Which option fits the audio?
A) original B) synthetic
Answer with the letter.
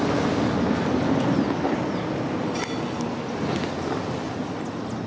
A